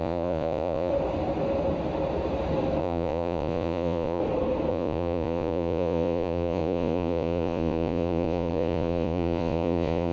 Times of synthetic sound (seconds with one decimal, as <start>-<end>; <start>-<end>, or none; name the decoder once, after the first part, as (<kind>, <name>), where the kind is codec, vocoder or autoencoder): 0.0-0.9 (vocoder, Vocos); 2.8-4.2; 4.7-10.1